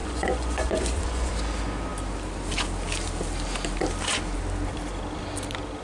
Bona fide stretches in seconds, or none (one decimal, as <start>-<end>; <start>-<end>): 1.3-5.8